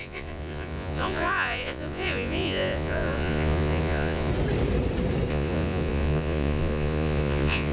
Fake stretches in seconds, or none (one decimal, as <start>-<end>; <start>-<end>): 0.0-4.3; 5.3-7.7